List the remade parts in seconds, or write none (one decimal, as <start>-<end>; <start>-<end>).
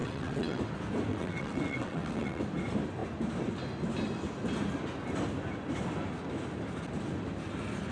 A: 0.0-0.6; 1.1-2.4